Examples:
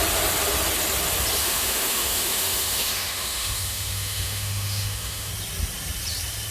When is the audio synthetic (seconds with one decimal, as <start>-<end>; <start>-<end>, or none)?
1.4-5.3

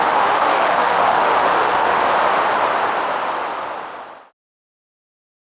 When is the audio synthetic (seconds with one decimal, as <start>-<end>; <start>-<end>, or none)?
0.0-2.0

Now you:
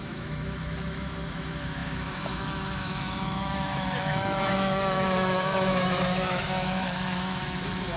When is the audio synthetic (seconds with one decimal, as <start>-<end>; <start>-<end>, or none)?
0.0-8.0

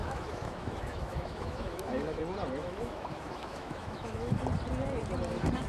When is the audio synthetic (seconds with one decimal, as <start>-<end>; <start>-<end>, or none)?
0.0-2.2; 2.6-4.4

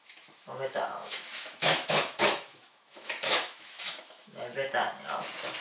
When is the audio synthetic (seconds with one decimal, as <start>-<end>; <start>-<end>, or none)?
0.0-4.5

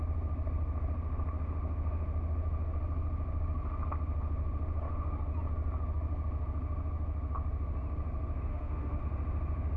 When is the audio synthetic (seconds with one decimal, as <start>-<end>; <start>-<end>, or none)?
8.5-9.0

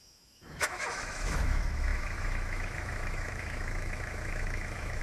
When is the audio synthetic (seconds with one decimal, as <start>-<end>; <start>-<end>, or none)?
0.0-5.0